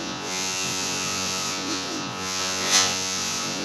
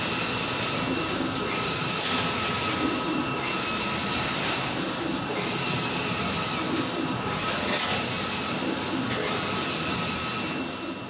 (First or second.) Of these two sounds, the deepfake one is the first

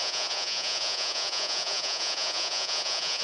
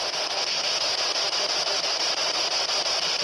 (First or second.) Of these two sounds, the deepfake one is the first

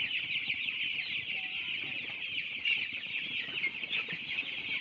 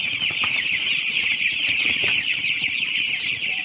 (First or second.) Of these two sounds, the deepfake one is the second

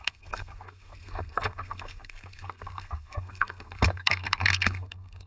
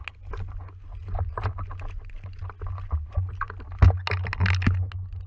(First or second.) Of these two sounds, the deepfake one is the first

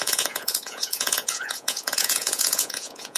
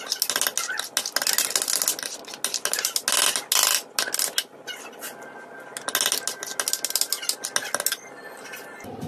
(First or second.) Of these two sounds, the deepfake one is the first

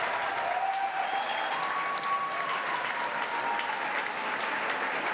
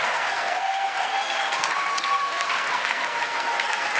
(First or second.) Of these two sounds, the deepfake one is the second